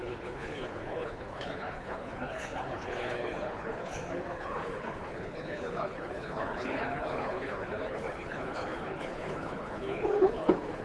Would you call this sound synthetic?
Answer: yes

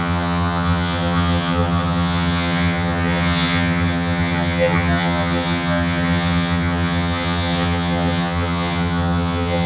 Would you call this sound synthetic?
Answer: yes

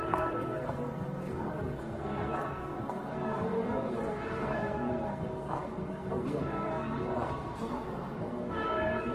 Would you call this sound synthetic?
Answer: yes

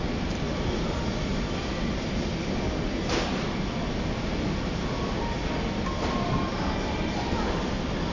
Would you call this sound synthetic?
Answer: no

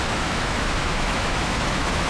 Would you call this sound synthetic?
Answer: yes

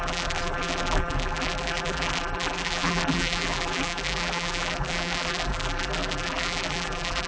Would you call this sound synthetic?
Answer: yes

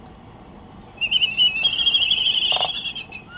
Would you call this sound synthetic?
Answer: no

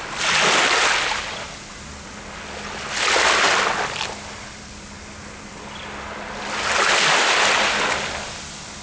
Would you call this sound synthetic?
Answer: no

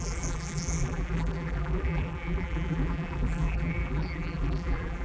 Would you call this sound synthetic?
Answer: yes